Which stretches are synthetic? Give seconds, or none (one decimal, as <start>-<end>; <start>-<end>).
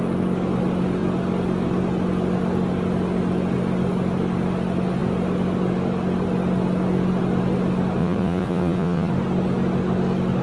8.0-9.1